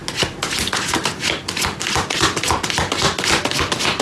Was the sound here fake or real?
real